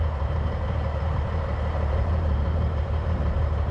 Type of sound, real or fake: fake